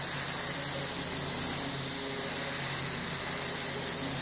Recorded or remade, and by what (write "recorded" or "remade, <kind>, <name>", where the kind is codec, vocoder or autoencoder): recorded